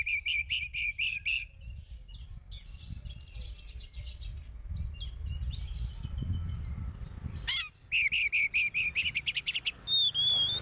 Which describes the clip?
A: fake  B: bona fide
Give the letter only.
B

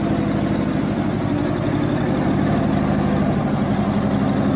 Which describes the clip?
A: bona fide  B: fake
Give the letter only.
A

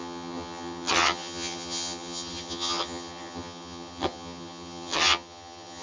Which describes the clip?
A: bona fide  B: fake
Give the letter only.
B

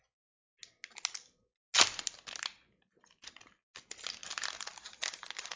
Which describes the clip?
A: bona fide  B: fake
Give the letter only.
A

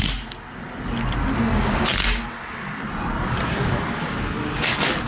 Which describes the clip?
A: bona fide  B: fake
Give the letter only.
A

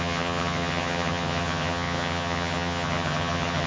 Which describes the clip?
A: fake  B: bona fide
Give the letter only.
A